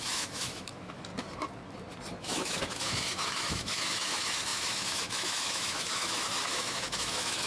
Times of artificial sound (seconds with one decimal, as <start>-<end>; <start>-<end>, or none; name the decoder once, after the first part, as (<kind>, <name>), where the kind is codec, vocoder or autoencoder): 0.0-1.1 (autoencoder, DAC-VAE); 2.2-7.5